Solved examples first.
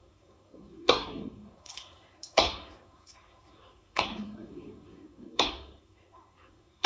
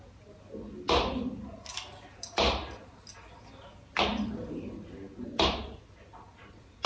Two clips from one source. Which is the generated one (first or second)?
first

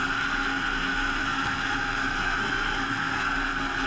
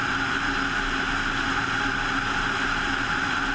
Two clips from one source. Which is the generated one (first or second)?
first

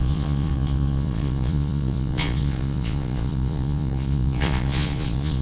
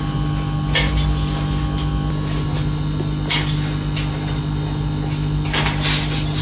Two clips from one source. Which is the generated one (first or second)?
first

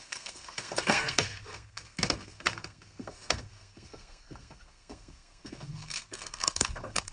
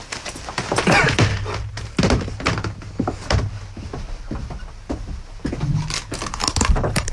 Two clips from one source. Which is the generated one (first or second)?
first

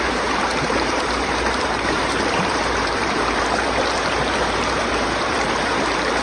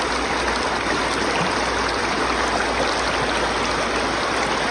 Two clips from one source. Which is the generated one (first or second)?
first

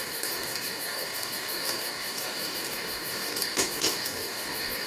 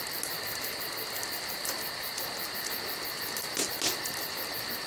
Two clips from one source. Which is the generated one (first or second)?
first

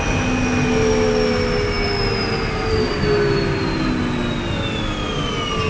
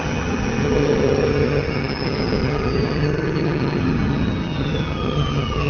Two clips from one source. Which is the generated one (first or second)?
second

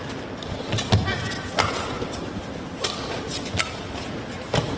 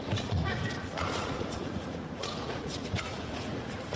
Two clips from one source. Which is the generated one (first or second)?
second